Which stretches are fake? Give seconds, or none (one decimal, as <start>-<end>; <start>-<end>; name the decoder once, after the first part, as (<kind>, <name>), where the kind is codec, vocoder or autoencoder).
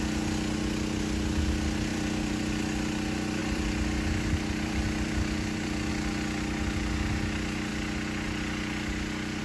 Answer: 1.9-2.6 (vocoder, BigVGAN v2); 3.4-5.9